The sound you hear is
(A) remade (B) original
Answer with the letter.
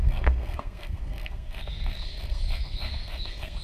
A